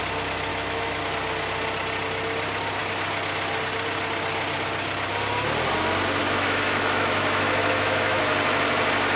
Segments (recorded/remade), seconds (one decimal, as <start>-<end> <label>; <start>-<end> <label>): 0.0-0.5 recorded; 0.5-1.0 remade; 1.0-6.2 recorded; 6.2-8.2 remade; 8.2-9.2 recorded